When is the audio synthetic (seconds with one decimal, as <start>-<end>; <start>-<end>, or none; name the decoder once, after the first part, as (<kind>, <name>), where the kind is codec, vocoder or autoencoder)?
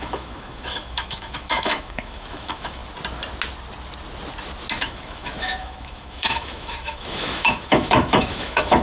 0.0-2.8 (autoencoder, DAC-VAE); 4.8-8.8